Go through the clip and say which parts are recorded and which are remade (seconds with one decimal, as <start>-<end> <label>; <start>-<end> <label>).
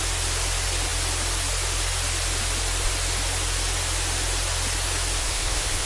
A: 0.0-5.2 recorded; 5.2-5.9 remade